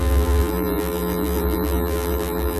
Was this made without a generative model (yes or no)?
no